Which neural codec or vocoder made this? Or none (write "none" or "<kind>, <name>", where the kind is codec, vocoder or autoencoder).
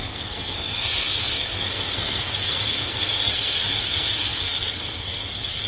codec, SNAC